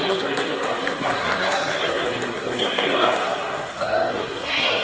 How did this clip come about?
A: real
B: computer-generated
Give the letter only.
B